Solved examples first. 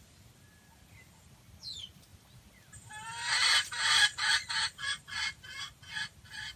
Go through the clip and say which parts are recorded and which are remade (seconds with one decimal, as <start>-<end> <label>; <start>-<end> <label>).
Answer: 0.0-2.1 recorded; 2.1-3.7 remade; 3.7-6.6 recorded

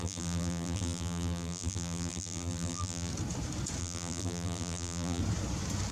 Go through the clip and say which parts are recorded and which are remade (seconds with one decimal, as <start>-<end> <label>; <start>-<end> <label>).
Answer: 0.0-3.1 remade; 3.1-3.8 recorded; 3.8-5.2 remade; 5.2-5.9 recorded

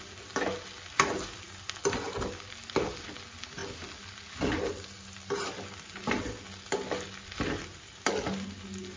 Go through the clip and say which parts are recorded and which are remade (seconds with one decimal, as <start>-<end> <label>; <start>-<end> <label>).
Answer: 0.0-9.0 recorded

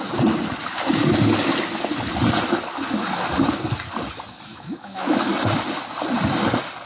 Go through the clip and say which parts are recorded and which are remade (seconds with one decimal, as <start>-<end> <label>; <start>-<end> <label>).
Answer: 0.0-4.5 recorded; 4.5-5.3 remade; 5.3-6.9 recorded